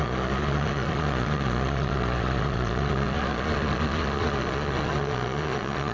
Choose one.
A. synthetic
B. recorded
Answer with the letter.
A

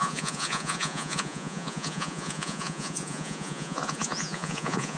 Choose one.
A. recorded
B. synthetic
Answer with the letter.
B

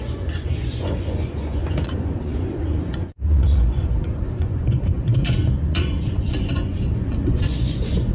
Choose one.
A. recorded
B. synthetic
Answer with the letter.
B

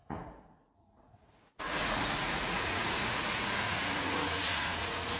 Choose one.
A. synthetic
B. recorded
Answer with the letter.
A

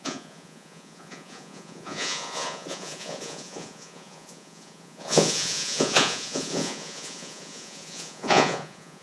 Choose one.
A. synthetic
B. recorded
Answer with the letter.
A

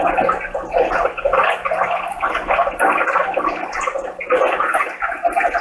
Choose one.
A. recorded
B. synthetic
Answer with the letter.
A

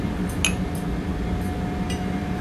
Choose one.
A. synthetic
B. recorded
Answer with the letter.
B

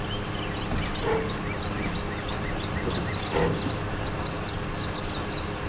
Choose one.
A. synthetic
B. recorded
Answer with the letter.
B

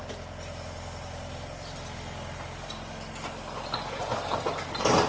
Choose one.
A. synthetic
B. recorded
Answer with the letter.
B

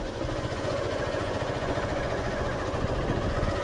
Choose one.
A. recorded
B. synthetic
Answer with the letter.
B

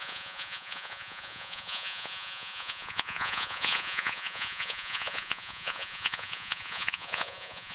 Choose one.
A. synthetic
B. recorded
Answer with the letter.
A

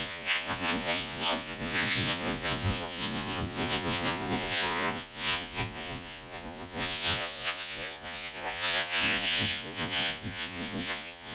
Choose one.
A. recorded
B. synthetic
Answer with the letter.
B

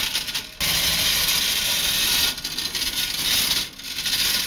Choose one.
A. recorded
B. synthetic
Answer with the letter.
A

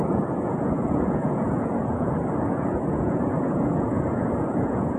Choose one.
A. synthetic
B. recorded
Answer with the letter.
A